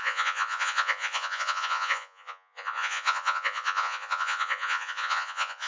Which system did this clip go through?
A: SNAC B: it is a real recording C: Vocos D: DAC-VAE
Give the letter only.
C